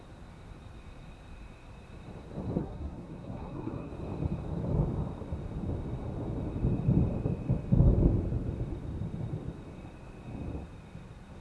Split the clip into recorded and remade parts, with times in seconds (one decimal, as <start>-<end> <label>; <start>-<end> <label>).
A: 0.0-2.6 recorded; 2.6-3.9 remade; 3.9-11.4 recorded